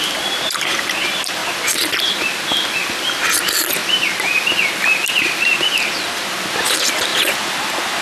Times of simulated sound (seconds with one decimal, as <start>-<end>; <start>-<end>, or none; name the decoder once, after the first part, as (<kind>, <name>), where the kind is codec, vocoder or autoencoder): none